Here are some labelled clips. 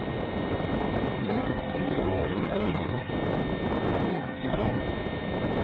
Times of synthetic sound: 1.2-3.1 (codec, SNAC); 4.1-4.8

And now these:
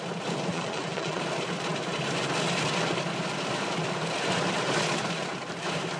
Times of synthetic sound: 0.5-1.2 (vocoder, Vocos)

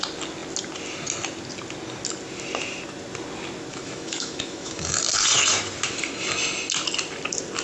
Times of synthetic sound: 3.7-5.0 (autoencoder, DAC-VAE)